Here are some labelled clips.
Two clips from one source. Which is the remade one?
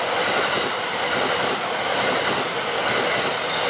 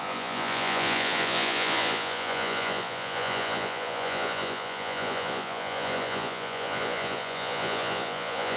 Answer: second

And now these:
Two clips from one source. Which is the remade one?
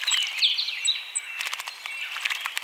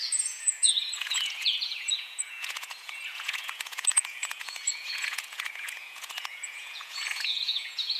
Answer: second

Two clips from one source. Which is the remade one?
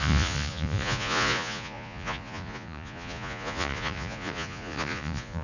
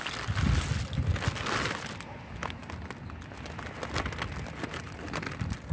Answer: first